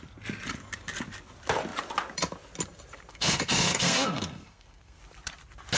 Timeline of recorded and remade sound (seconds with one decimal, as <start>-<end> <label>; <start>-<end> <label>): 0.0-3.1 recorded; 3.1-5.0 remade; 5.0-5.8 recorded